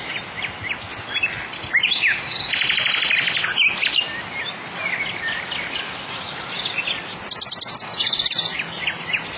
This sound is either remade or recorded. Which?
recorded